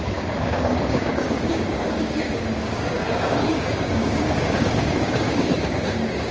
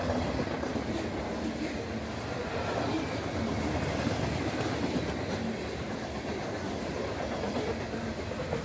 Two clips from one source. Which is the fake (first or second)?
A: first